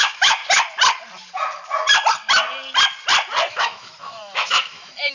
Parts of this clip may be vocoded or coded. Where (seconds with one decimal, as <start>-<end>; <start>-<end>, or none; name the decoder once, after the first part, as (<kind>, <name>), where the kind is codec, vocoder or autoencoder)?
0.0-0.4 (autoencoder, DAC-VAE); 3.5-5.1